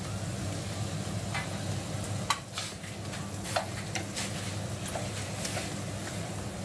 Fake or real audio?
real